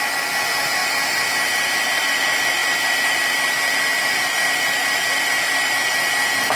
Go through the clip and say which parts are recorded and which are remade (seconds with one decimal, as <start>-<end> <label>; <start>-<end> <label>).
0.0-6.6 recorded